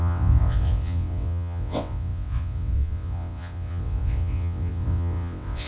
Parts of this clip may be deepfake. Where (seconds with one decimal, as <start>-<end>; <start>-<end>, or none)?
0.0-5.7